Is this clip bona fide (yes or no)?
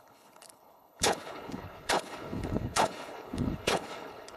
no